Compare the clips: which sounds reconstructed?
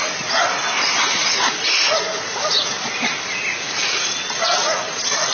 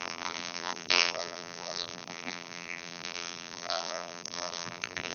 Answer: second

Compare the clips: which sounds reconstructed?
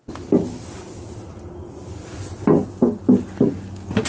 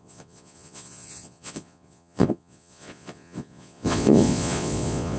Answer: second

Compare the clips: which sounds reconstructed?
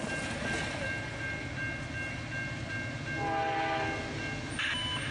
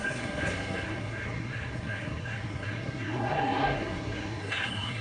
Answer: second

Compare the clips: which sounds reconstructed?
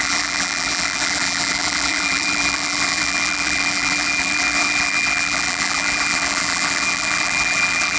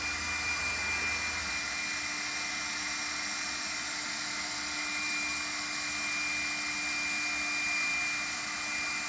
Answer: first